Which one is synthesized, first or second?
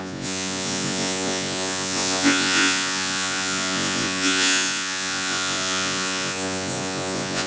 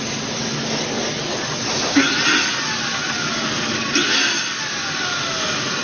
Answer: first